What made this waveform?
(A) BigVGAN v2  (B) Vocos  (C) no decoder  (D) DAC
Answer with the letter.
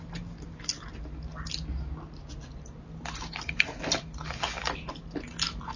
C